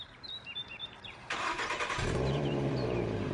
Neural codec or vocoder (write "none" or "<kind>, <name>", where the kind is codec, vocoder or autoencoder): vocoder, BigVGAN v2